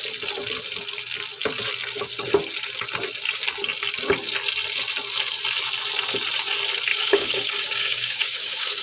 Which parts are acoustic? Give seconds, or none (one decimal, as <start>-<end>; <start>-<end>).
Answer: 0.0-6.9